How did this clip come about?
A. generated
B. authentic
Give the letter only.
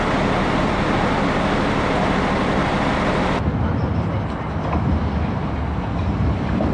B